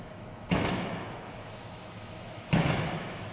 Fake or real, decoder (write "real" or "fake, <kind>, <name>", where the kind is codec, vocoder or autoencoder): fake, autoencoder, DAC-VAE